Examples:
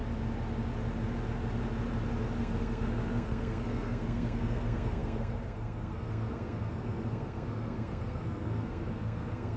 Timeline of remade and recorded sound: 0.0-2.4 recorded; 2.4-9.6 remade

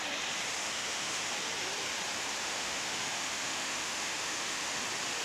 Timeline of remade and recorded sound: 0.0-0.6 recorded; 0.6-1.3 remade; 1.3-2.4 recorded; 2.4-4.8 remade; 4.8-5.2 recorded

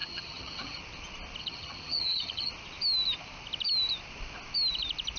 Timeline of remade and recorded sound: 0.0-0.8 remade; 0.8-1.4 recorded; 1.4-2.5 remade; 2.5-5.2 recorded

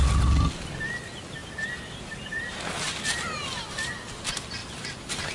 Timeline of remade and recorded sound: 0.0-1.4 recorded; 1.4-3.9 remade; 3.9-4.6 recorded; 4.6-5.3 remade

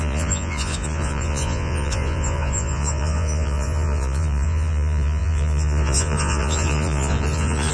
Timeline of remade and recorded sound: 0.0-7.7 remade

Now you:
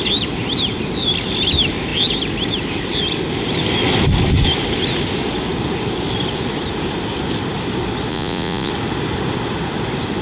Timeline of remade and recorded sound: 0.0-8.1 recorded; 8.1-8.7 remade; 8.7-10.2 recorded